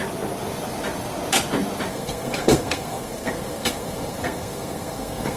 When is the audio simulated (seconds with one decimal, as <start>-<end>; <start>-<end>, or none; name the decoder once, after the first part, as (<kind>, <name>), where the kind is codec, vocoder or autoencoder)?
1.9-5.4 (codec, SNAC)